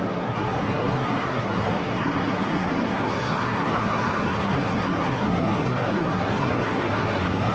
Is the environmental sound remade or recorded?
remade